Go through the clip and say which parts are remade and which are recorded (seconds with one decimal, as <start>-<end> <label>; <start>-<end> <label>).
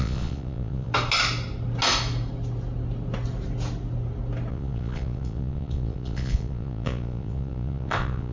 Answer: 0.0-0.9 remade; 0.9-4.5 recorded; 4.5-8.3 remade